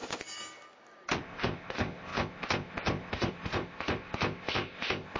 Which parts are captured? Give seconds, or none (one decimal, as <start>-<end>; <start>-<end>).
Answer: 0.0-1.2